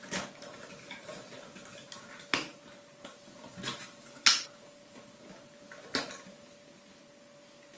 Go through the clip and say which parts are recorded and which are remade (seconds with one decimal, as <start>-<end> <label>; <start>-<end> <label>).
0.0-7.8 recorded